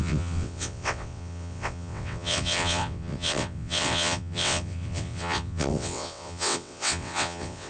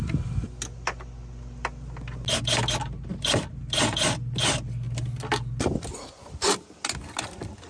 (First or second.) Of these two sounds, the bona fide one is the second